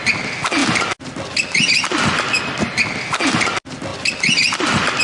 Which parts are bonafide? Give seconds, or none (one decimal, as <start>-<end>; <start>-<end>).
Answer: 0.0-5.0